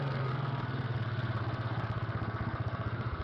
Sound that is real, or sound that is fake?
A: fake